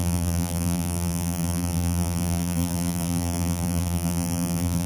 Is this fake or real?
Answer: fake